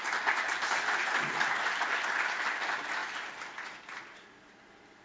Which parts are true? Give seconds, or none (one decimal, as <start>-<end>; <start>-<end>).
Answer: 0.0-5.0